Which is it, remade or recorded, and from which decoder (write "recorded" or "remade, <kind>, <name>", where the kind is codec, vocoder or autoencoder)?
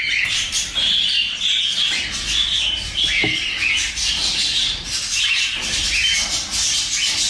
recorded